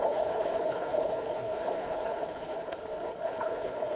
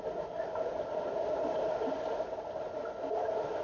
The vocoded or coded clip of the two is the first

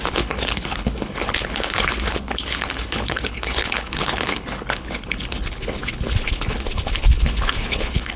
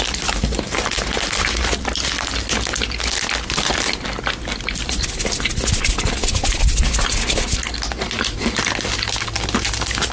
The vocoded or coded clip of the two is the first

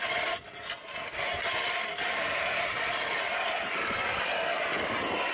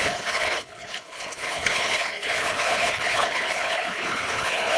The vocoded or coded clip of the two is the second